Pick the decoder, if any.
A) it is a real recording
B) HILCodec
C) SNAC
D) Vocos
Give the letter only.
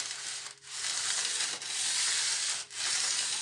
A